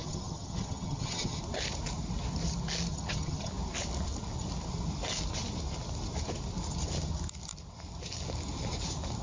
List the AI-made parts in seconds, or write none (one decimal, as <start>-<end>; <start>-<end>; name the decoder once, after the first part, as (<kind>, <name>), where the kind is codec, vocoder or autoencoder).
0.0-1.4 (vocoder, HiFi-GAN); 2.9-3.5